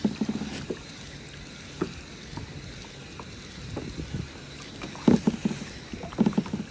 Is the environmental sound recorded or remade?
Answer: recorded